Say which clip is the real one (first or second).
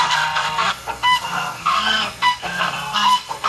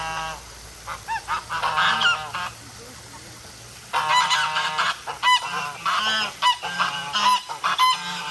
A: second